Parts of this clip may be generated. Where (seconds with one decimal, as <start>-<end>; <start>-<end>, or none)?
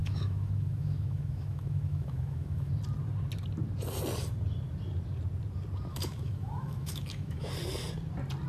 0.0-2.7; 5.9-7.5